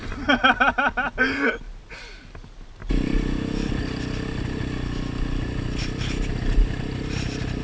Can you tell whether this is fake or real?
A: real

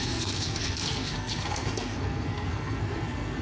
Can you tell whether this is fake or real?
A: fake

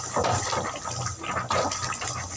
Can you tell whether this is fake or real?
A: real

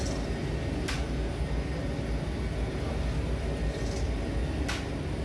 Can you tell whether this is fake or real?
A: real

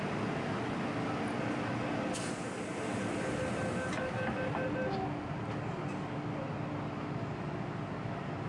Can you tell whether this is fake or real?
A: real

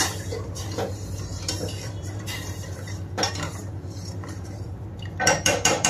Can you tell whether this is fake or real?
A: fake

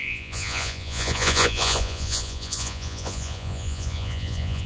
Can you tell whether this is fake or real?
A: fake